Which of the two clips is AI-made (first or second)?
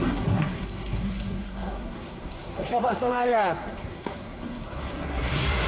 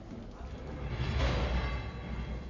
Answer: first